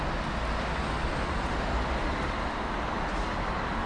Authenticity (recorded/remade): recorded